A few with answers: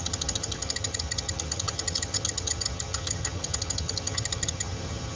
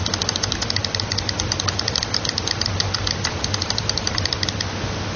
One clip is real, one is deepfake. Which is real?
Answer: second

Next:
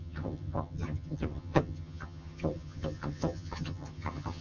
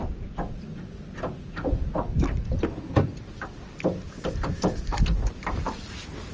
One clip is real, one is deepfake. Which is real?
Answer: second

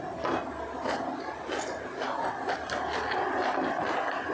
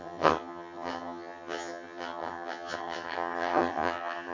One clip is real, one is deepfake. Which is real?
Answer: first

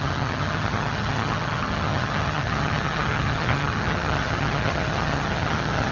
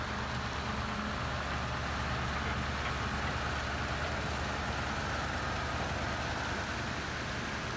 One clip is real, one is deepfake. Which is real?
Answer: second